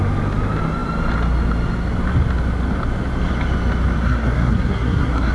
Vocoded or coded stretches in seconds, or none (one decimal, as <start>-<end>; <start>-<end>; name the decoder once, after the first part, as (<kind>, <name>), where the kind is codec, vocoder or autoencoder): 4.0-5.3 (codec, SNAC)